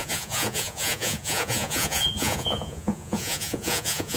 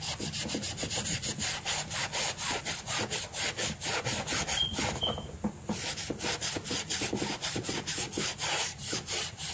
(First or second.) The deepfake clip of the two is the first